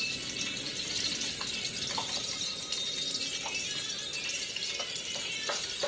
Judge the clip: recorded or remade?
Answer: recorded